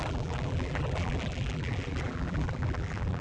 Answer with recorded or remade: remade